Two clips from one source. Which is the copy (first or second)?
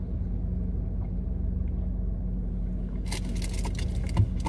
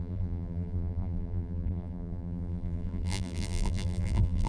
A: second